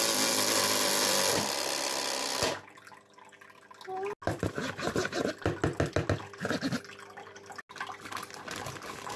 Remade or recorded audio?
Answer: recorded